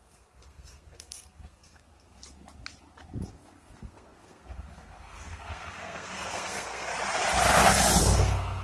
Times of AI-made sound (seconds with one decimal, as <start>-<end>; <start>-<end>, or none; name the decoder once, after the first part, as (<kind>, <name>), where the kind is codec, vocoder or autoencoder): 0.0-2.2 (codec, SNAC); 3.3-6.9; 8.0-8.6